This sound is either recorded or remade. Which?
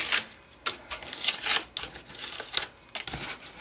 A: recorded